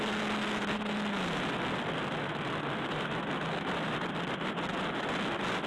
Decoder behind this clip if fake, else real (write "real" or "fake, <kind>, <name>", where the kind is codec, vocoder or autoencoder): real